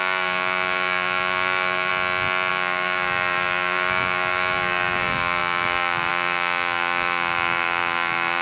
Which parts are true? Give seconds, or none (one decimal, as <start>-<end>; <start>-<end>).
1.9-2.5